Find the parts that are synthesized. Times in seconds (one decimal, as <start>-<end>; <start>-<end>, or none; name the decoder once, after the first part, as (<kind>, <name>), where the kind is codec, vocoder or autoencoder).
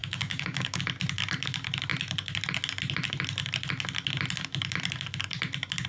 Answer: 0.0-0.8 (codec, DAC)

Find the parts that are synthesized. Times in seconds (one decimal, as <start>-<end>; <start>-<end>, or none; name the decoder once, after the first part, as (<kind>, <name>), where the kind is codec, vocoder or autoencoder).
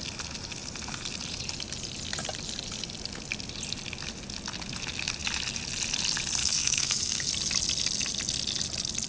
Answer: 6.4-7.3 (codec, SNAC)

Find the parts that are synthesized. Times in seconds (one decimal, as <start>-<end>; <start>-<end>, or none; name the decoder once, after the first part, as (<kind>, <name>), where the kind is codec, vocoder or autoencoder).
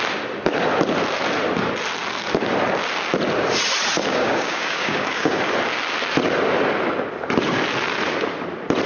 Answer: 4.1-5.4 (codec, DAC)